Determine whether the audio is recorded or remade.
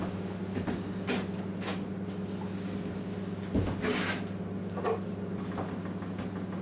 recorded